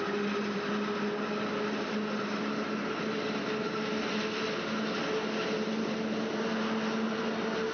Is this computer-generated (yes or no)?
no